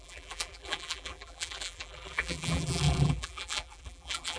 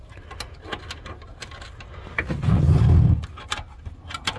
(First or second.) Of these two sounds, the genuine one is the second